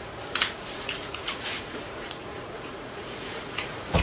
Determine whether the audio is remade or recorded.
remade